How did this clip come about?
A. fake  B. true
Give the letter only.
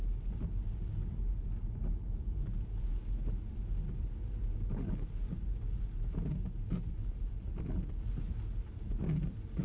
B